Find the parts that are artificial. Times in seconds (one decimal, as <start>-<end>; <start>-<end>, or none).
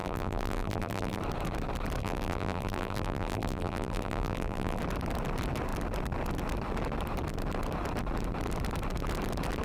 0.0-1.2; 2.0-4.8